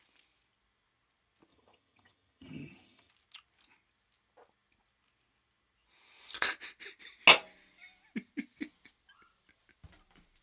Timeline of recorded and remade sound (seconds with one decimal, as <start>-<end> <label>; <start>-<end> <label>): 0.0-1.5 recorded; 1.5-3.1 remade; 3.1-10.4 recorded